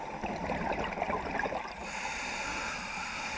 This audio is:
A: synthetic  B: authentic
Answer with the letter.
B